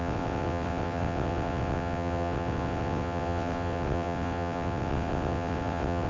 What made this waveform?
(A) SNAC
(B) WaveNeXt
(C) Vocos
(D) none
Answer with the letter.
B